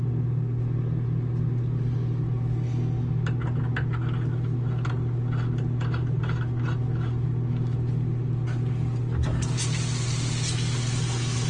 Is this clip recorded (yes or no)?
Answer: yes